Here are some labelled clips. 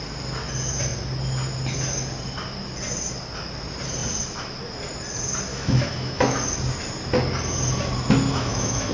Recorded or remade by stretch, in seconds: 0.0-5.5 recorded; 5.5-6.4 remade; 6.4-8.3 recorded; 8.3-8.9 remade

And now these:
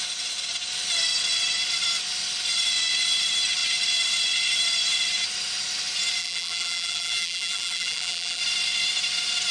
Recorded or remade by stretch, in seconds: 0.0-6.2 recorded; 6.2-8.4 remade; 8.4-9.5 recorded

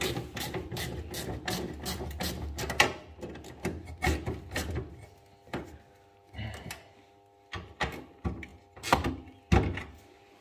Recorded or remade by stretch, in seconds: 0.0-10.4 recorded

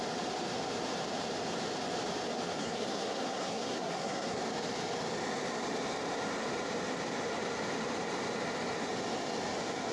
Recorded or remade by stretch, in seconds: 0.0-2.6 recorded; 2.6-4.4 remade; 4.4-9.9 recorded